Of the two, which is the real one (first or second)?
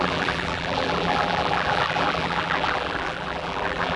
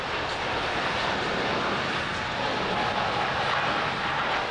second